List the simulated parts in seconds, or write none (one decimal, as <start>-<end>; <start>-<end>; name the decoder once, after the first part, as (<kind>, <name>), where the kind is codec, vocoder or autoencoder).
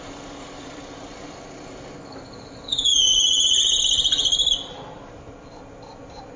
2.7-3.8 (vocoder, Vocos)